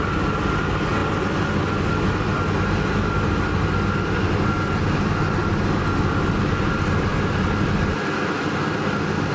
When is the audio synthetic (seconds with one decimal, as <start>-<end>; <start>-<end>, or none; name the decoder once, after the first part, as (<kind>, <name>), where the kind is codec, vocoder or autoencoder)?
none